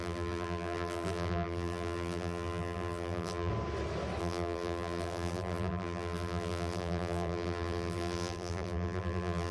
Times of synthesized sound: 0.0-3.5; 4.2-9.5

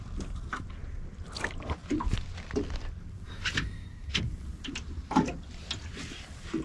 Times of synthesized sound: none